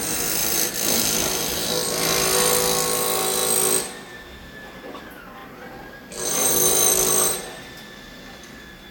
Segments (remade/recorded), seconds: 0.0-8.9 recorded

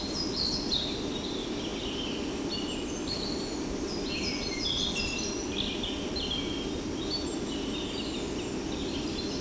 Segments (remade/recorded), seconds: 0.0-9.4 recorded

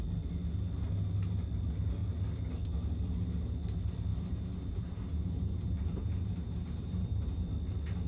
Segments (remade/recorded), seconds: 0.0-4.1 recorded; 4.1-7.5 remade; 7.5-8.1 recorded

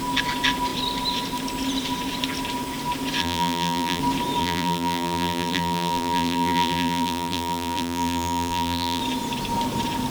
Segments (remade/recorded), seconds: 0.0-3.2 recorded; 3.2-4.0 remade; 4.0-4.4 recorded; 4.4-9.0 remade; 9.0-10.1 recorded

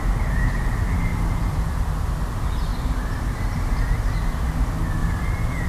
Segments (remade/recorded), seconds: 0.0-1.1 recorded; 1.1-1.8 remade; 1.8-2.7 recorded; 2.7-3.5 remade; 3.5-5.0 recorded; 5.0-5.7 remade

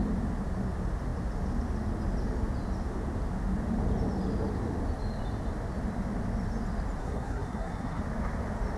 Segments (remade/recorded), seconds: 0.0-7.0 recorded; 7.0-8.0 remade; 8.0-8.8 recorded